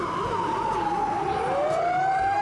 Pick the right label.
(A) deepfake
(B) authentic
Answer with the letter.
B